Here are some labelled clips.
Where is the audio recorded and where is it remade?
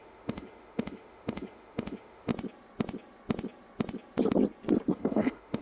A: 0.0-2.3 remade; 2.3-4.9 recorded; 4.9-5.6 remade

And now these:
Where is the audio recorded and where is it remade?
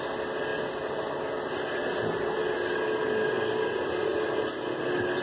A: 0.0-5.2 recorded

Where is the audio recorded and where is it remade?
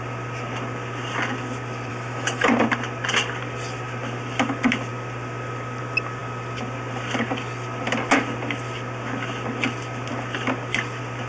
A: 0.0-1.9 recorded; 1.9-2.5 remade; 2.5-11.3 recorded